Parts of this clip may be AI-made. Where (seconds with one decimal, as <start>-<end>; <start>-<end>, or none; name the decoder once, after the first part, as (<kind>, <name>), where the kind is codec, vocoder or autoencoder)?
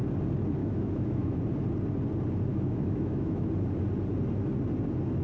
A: 0.6-1.4 (autoencoder, DAC-VAE); 2.5-3.5